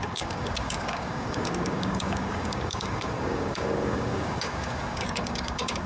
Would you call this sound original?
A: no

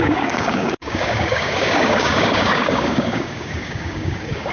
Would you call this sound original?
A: no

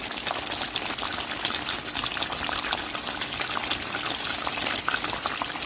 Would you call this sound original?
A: yes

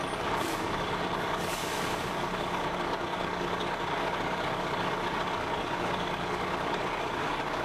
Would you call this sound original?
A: no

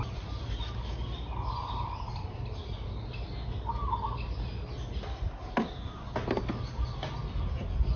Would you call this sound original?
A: yes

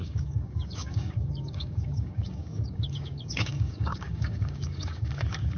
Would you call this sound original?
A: no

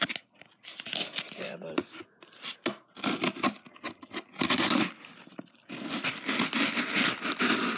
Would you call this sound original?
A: yes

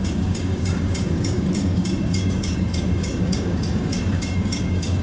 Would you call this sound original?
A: no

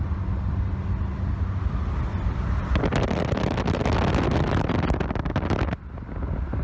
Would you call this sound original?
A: yes